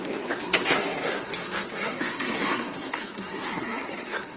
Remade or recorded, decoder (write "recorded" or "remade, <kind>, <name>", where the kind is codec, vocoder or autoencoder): remade, codec, SNAC